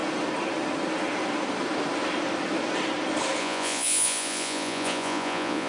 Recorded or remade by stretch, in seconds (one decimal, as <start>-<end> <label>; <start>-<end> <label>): 0.0-3.4 recorded; 3.4-5.7 remade

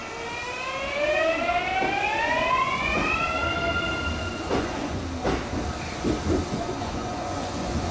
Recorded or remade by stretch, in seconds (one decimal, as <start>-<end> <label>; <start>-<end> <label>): 0.0-2.2 recorded; 2.2-3.0 remade; 3.0-4.2 recorded; 4.2-5.0 remade; 5.0-6.5 recorded; 6.5-7.9 remade

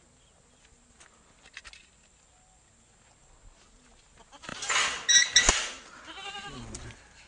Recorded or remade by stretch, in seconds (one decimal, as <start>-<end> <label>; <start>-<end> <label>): 0.0-7.3 recorded

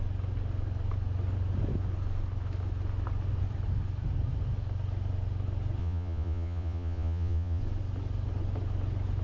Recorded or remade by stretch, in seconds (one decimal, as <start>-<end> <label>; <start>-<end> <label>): 0.0-5.8 recorded; 5.8-7.6 remade; 7.6-9.2 recorded

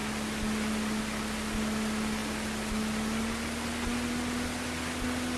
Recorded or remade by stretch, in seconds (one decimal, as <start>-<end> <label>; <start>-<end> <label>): 0.0-5.4 recorded